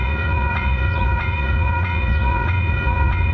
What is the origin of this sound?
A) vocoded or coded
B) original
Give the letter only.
A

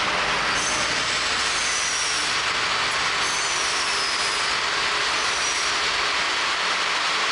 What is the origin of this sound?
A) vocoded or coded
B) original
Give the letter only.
B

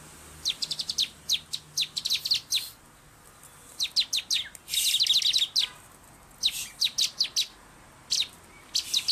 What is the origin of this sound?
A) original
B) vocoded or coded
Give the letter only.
A